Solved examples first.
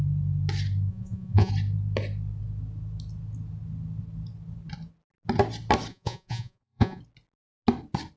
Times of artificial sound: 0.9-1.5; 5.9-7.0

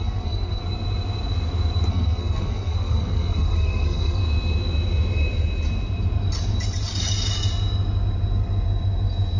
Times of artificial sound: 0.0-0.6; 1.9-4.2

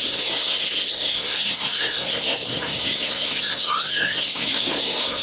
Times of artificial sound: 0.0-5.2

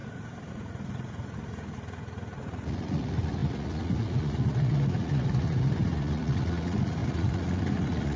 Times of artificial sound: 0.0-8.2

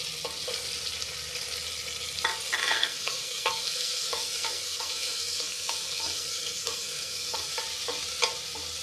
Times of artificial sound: 2.6-7.5